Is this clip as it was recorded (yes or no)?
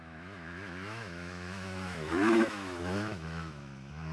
no